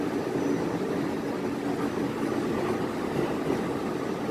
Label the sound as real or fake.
real